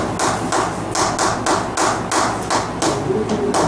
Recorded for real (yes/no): yes